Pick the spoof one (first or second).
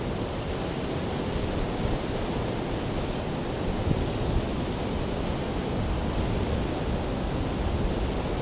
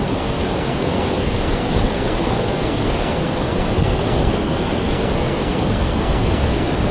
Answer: second